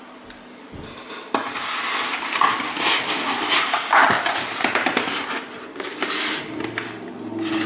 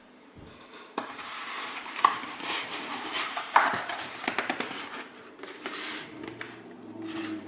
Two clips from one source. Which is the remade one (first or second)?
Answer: second